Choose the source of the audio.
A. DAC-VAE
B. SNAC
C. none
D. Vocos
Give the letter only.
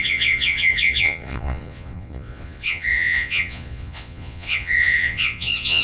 D